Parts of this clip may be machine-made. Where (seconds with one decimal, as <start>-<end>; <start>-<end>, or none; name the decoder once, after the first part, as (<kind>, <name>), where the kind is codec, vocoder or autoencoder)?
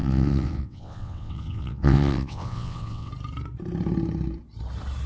0.0-3.1 (vocoder, WaveNeXt)